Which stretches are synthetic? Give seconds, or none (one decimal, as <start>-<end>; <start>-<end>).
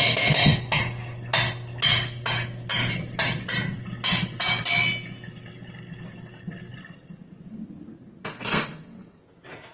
8.2-9.2